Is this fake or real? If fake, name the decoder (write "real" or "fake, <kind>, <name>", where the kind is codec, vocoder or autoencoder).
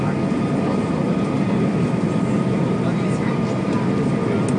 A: real